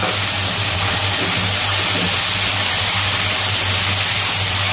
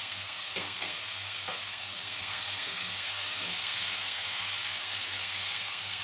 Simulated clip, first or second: second